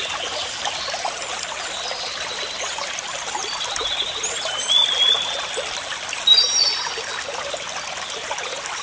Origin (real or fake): real